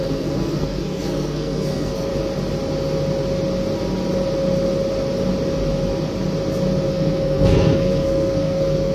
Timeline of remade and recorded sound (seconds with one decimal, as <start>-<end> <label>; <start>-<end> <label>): 0.0-2.1 remade; 2.1-6.9 recorded; 6.9-8.9 remade